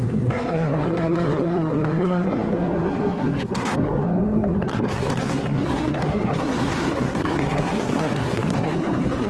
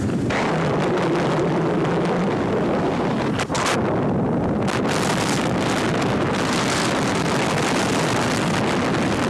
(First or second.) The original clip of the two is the second